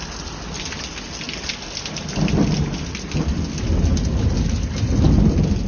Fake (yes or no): no